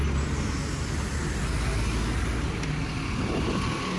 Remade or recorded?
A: recorded